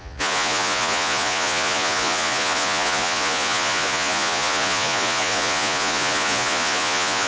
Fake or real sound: fake